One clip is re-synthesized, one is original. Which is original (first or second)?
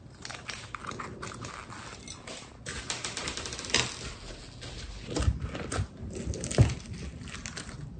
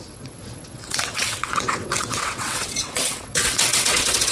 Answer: first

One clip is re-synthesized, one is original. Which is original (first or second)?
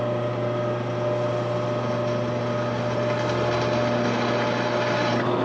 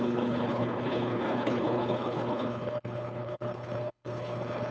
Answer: first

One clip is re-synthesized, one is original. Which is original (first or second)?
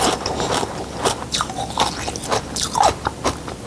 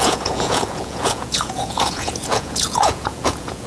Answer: first